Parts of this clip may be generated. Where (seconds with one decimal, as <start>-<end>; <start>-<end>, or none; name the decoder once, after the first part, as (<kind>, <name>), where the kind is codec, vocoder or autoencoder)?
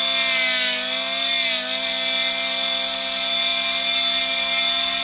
none